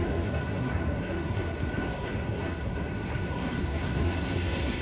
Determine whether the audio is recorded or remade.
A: remade